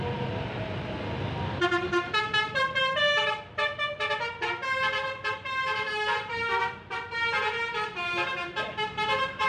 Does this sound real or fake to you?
real